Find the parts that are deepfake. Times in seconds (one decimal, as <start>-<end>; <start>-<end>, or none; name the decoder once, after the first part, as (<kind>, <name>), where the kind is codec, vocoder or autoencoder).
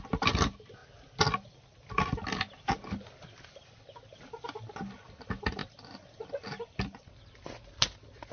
none